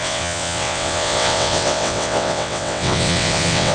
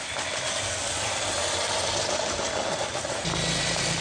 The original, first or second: second